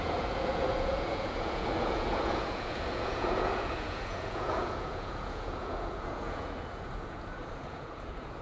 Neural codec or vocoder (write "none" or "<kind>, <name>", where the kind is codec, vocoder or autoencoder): vocoder, Vocos